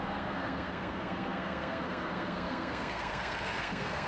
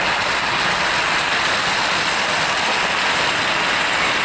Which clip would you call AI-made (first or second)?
first